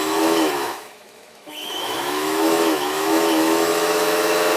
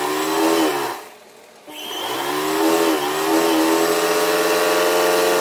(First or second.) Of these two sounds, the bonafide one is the second